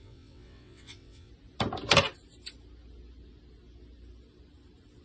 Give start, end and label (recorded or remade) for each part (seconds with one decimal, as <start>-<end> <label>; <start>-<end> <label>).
0.0-1.3 remade; 1.3-5.0 recorded